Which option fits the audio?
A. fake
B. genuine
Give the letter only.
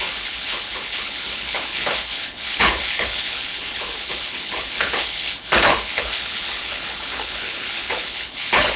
A